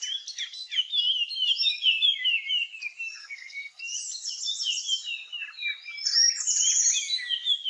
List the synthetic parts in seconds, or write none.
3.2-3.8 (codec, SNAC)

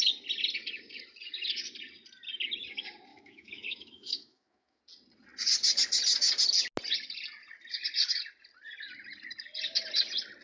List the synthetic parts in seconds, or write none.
3.1-4.8 (autoencoder, DAC-VAE)

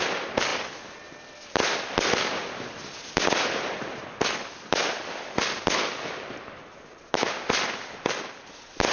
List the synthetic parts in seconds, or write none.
none

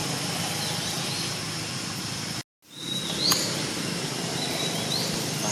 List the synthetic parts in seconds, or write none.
none

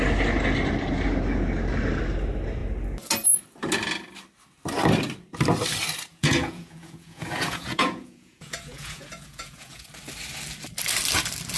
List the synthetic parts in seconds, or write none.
6.1-9.9 (vocoder, Vocos)

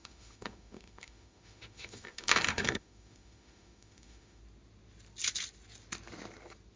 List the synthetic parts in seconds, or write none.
0.0-4.4 (autoencoder, DAC-VAE)